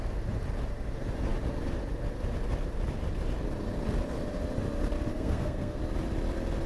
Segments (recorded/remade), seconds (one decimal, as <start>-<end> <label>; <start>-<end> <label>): 0.0-5.1 recorded; 5.1-5.8 remade; 5.8-6.7 recorded